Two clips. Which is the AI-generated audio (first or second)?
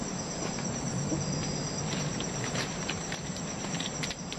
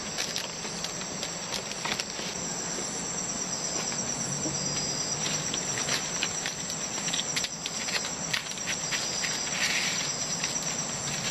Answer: first